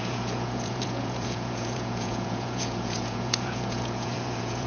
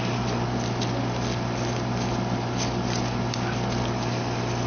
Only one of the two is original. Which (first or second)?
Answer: second